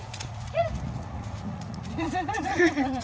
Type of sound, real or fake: fake